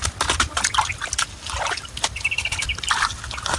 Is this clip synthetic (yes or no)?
no